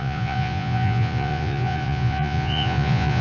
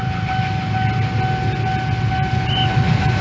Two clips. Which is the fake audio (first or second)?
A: first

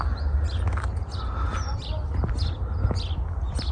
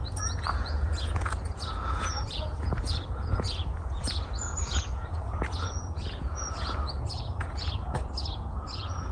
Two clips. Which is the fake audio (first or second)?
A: second